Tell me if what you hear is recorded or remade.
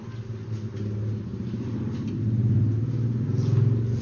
recorded